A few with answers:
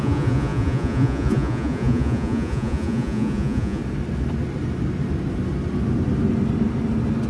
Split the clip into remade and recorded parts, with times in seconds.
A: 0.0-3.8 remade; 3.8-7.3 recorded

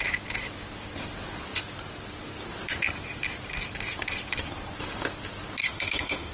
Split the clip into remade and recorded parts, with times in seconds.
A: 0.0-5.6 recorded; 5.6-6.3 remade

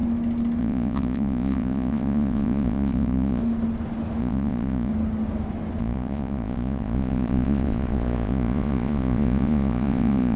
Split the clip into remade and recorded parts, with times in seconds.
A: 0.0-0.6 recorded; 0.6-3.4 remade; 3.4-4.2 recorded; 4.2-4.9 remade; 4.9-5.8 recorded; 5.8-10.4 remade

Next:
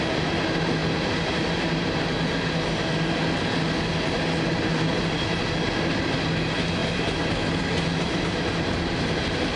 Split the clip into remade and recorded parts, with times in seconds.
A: 0.0-9.6 recorded

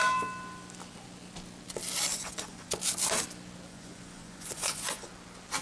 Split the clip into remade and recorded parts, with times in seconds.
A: 0.0-2.1 recorded; 2.1-2.7 remade; 2.7-3.7 recorded; 3.7-5.1 remade; 5.1-5.6 recorded

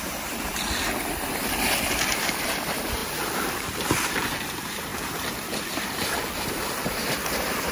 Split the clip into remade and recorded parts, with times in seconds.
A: 0.0-0.5 remade; 0.5-2.1 recorded; 2.1-7.0 remade; 7.0-7.7 recorded

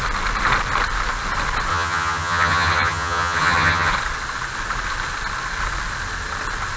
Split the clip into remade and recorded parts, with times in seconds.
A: 0.0-1.7 recorded; 1.7-3.9 remade; 3.9-6.8 recorded